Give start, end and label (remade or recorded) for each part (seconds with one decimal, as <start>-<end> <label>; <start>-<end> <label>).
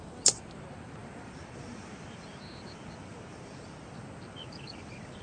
0.0-1.0 recorded; 1.0-1.9 remade; 1.9-3.3 recorded; 3.3-4.1 remade; 4.1-5.2 recorded